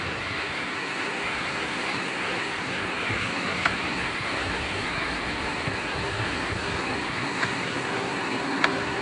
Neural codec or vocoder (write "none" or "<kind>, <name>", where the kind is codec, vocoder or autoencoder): codec, SNAC